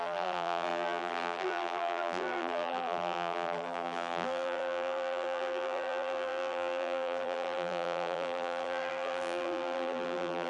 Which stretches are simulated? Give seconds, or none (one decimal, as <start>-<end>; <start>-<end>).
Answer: 0.0-10.5